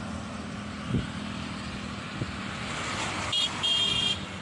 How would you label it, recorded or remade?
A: recorded